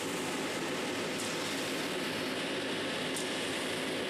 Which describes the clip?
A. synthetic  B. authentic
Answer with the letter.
B